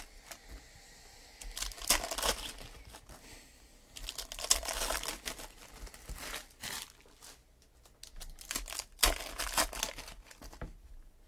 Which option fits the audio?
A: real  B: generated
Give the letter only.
A